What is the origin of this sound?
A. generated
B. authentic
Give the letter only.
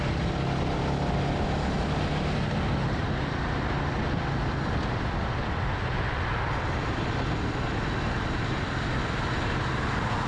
B